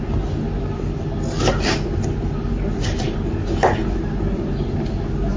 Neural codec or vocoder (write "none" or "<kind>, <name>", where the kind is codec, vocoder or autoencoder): none